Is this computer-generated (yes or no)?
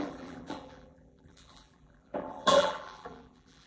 yes